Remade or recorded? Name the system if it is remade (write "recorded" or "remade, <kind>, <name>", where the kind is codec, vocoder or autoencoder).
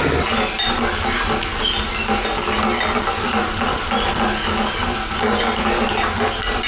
recorded